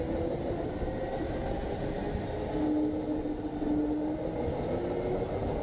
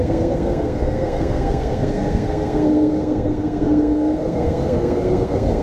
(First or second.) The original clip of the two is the first